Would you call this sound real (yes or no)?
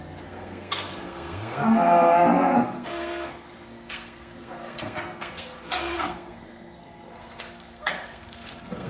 no